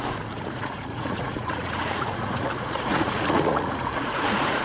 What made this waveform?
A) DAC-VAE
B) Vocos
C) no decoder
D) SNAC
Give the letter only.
B